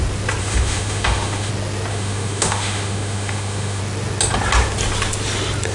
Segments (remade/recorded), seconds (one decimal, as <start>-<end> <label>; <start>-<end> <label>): 0.0-0.4 recorded; 0.4-1.5 remade; 1.5-1.9 recorded; 1.9-3.8 remade; 3.8-5.7 recorded